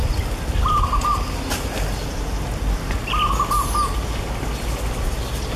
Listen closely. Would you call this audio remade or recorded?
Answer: recorded